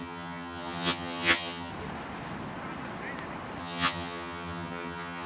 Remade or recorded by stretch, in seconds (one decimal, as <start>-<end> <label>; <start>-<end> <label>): 0.0-1.7 remade; 1.7-3.6 recorded; 3.6-5.3 remade